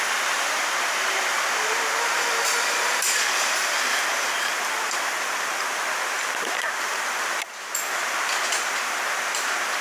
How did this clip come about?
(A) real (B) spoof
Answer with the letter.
B